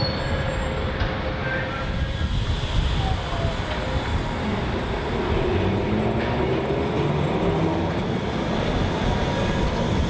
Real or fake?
real